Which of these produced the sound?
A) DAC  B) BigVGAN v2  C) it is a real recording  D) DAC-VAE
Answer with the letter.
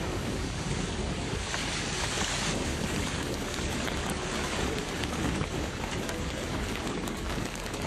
A